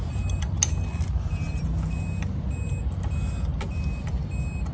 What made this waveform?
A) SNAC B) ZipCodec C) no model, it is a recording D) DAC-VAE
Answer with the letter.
C